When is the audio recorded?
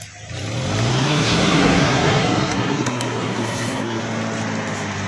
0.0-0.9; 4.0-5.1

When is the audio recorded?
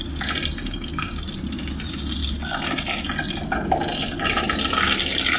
0.0-5.4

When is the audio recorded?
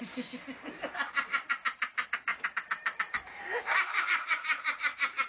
none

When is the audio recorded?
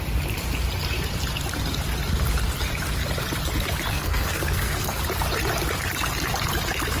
0.0-3.9; 5.0-7.0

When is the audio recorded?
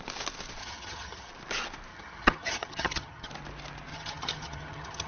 0.0-0.6; 1.3-1.9; 3.3-3.9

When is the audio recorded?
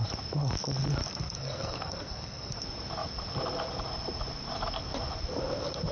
0.0-1.1; 2.6-5.9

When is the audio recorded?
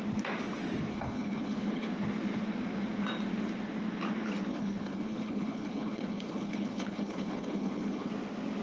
0.0-0.9; 1.9-4.5; 8.1-8.6